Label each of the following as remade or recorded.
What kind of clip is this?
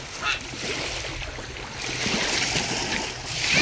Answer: recorded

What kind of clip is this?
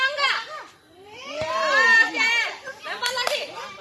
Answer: remade